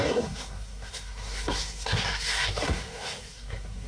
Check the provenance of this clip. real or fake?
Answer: fake